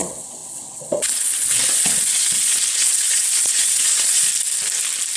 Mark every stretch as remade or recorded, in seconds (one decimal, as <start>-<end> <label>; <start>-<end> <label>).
0.0-4.3 remade; 4.3-5.2 recorded